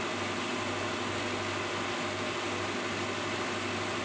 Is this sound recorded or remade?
recorded